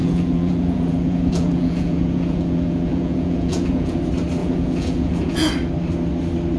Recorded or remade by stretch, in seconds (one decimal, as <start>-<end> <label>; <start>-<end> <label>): 0.0-4.0 remade; 4.0-4.4 recorded; 4.4-5.5 remade; 5.5-6.6 recorded